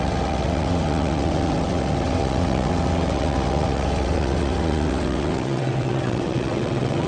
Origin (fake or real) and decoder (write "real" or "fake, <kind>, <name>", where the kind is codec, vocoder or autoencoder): fake, vocoder, WaveNeXt